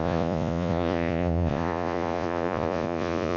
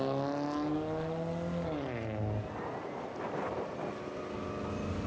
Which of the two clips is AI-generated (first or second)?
first